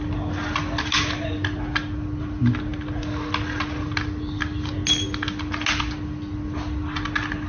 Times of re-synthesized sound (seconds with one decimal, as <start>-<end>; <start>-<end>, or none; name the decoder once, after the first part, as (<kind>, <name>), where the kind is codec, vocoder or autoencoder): none